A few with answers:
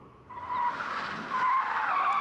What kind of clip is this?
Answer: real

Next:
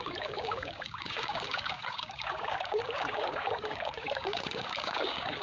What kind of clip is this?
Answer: fake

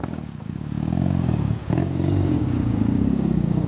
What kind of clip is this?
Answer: fake